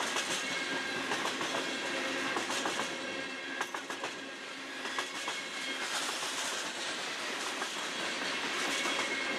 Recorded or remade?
recorded